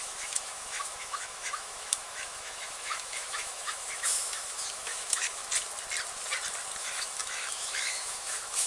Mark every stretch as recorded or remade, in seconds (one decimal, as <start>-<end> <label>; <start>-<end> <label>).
0.0-5.4 remade; 5.4-6.8 recorded; 6.8-8.7 remade